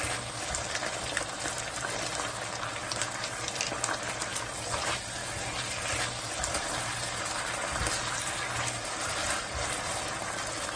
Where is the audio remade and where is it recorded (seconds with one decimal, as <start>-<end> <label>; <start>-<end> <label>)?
0.0-10.8 recorded